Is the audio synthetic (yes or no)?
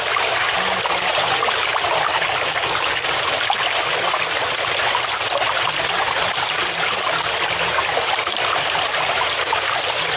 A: no